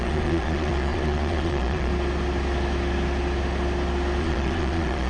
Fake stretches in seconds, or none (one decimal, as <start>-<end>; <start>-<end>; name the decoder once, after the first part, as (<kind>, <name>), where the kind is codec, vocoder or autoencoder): 0.0-1.9 (vocoder, Vocos); 4.2-5.1